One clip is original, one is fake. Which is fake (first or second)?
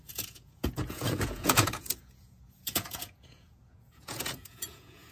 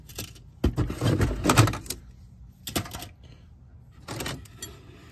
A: first